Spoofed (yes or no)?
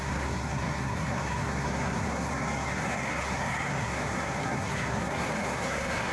yes